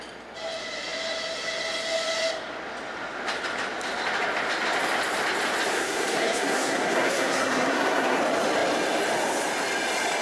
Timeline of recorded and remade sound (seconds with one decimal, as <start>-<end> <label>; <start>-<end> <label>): 0.0-5.7 recorded; 5.7-8.2 remade; 8.2-10.2 recorded